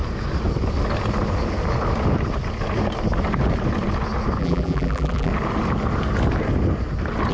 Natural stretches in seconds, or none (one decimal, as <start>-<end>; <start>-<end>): 0.0-4.4; 5.3-7.3